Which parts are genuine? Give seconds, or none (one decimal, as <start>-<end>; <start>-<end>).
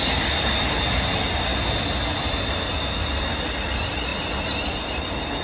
0.0-5.4